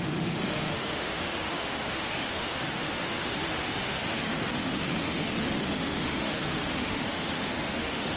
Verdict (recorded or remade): remade